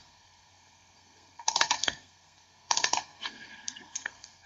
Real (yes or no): no